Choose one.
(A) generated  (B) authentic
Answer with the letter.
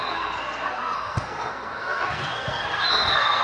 A